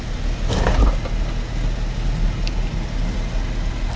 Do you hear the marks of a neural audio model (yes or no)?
no